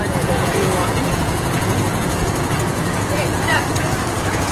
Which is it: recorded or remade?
remade